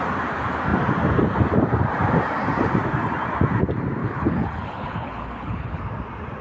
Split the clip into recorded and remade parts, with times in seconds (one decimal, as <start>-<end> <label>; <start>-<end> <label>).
0.0-4.0 recorded; 4.0-5.8 remade; 5.8-6.4 recorded